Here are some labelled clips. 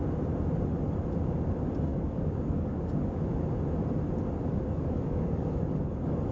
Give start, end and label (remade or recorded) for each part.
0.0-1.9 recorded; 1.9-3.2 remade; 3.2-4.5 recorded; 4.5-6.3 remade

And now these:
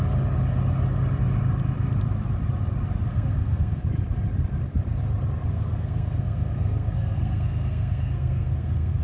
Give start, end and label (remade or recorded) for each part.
0.0-3.1 recorded; 3.1-3.8 remade; 3.8-5.5 recorded; 5.5-9.0 remade